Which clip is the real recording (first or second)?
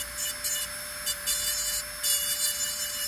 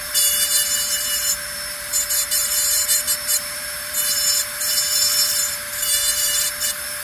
first